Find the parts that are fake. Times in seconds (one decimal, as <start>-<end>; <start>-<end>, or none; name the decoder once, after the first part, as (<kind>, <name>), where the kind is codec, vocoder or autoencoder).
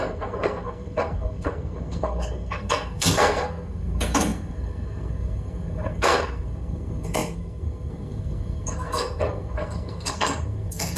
0.0-11.0 (codec, SNAC)